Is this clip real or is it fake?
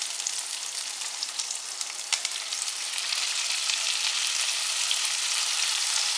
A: fake